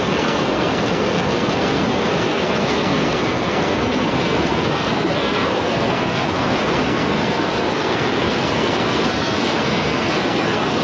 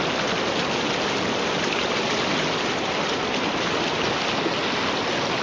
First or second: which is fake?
first